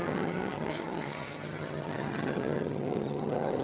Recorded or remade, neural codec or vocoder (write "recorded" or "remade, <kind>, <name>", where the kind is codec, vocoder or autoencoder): remade, vocoder, HiFi-GAN